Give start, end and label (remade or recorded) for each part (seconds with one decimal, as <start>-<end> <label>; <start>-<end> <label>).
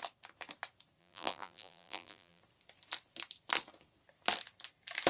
0.0-1.0 recorded; 1.0-2.4 remade; 2.4-5.1 recorded